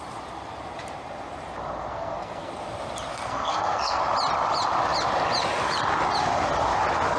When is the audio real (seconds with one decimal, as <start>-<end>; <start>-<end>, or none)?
0.0-1.9; 2.5-3.1; 4.0-7.2